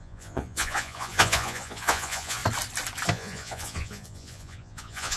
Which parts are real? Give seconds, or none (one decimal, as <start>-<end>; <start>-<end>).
2.4-3.1